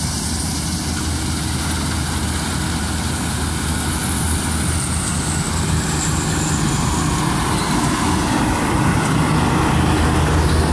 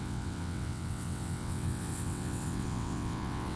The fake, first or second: second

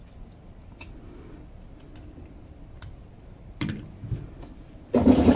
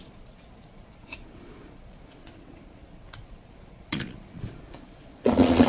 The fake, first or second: second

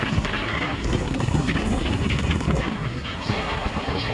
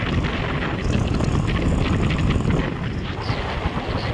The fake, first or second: first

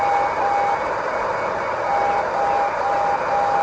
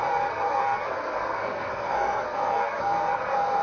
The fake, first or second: second